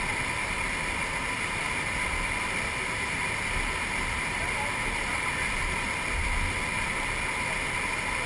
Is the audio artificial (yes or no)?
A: no